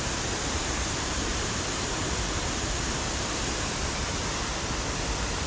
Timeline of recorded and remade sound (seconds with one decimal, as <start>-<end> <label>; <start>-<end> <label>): 0.0-1.3 recorded; 1.3-4.2 remade; 4.2-5.5 recorded